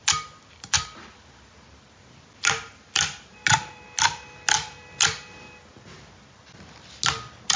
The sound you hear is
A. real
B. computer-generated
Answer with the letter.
A